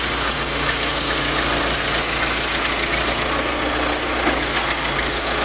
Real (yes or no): yes